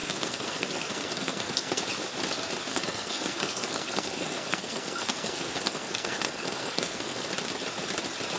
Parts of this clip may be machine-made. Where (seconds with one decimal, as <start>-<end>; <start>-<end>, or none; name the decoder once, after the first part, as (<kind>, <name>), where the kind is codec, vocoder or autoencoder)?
0.0-1.8 (codec, SNAC); 2.7-7.3